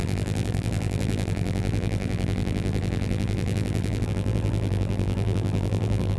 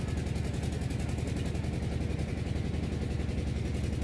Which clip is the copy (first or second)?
first